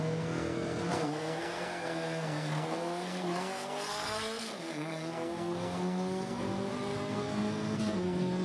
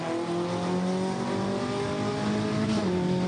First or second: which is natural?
second